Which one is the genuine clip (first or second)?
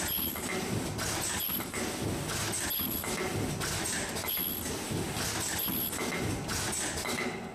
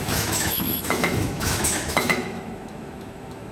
first